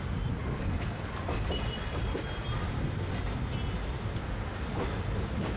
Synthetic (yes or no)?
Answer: no